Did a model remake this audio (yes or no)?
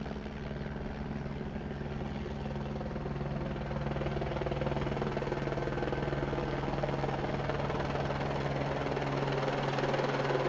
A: no